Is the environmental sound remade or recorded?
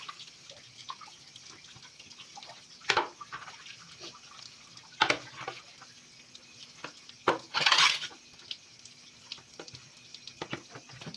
recorded